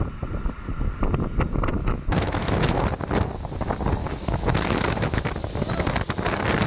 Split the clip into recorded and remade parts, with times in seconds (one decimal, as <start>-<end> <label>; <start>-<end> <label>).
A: 0.0-1.8 recorded; 1.8-2.8 remade; 2.8-4.0 recorded; 4.0-5.3 remade; 5.3-6.7 recorded